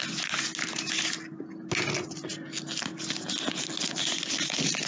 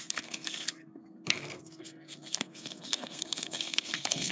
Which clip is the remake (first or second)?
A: second